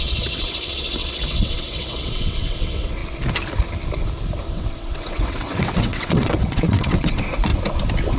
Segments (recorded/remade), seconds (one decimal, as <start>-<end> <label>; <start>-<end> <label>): 0.0-3.0 remade; 3.0-4.5 recorded; 4.5-7.5 remade; 7.5-8.2 recorded

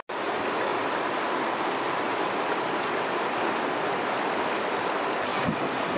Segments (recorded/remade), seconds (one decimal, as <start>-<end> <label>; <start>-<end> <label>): 0.0-6.0 recorded